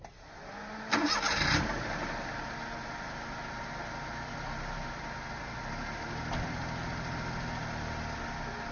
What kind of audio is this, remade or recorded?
recorded